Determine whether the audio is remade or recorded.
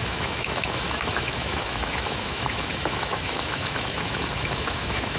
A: remade